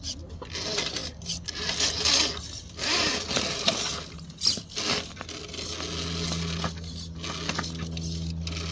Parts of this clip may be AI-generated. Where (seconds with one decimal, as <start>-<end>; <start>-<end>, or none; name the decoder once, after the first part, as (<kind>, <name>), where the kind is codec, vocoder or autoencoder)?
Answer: none